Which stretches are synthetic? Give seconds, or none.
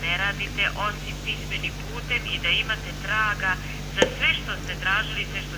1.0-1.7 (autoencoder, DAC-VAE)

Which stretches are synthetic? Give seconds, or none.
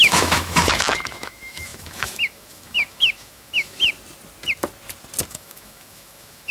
0.0-3.9 (autoencoder, DAC-VAE); 5.3-6.5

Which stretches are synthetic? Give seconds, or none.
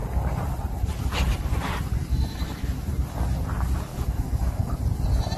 2.1-2.8 (autoencoder, DAC-VAE); 3.9-4.8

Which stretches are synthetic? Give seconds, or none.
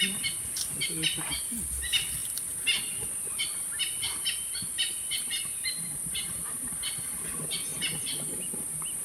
none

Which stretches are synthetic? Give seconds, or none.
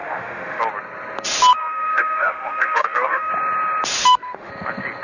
0.0-0.6 (autoencoder, DAC-VAE); 1.5-3.3; 4.0-4.5